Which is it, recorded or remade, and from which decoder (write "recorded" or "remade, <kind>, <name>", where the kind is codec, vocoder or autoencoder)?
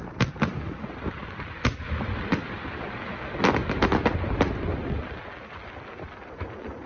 recorded